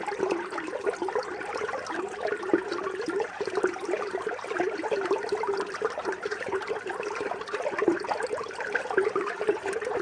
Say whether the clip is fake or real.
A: real